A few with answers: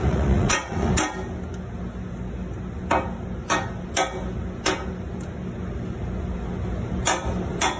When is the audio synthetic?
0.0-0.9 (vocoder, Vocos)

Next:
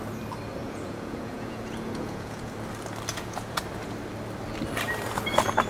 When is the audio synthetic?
0.6-2.5 (vocoder, Vocos); 3.1-3.6

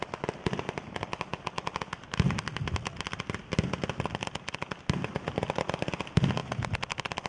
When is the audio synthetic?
none

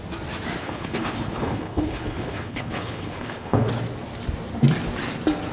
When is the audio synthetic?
0.6-3.7 (codec, HILCodec)